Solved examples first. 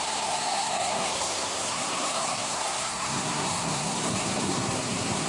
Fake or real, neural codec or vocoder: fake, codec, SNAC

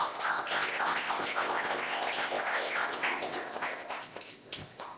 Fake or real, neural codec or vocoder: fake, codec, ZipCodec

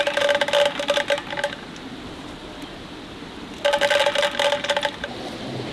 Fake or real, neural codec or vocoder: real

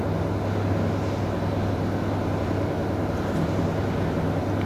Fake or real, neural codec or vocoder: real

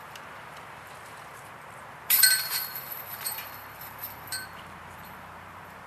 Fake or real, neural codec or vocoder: fake, vocoder, BigVGAN v2